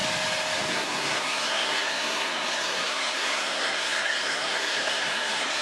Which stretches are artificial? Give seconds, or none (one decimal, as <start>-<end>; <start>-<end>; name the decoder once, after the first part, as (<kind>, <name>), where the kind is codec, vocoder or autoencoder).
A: 0.7-5.6 (codec, SNAC)